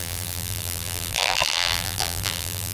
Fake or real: fake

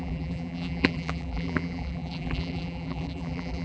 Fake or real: fake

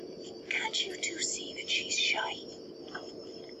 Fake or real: real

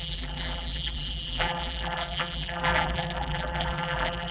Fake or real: fake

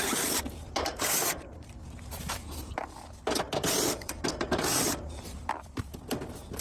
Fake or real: fake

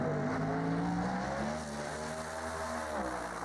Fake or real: real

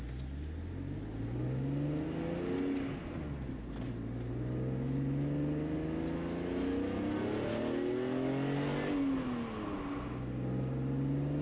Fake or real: real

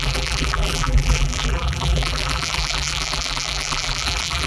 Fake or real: fake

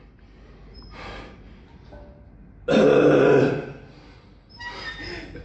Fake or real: real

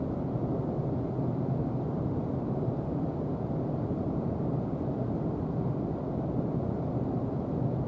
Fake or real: fake